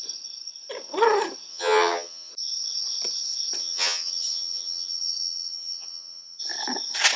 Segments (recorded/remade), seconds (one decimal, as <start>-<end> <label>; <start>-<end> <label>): 0.0-1.5 recorded; 1.5-2.3 remade; 2.3-3.6 recorded; 3.6-6.4 remade; 6.4-7.2 recorded